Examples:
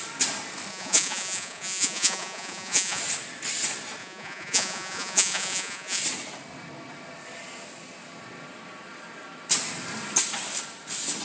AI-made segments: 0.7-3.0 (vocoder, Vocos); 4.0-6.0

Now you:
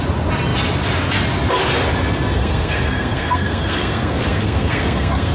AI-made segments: 2.4-5.3 (codec, SNAC)

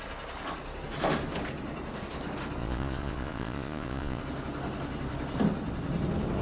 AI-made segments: 2.6-4.2 (vocoder, Vocos)

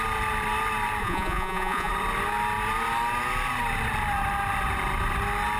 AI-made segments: 1.0-1.9 (vocoder, Vocos)

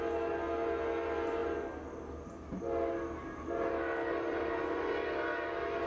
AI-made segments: none